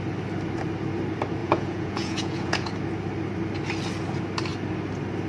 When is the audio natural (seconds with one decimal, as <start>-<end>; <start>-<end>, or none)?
0.0-1.4; 2.7-5.3